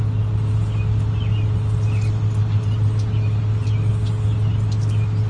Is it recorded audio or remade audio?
recorded